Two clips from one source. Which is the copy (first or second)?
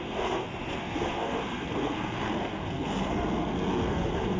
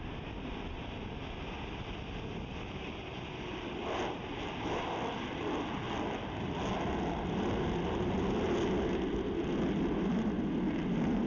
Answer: first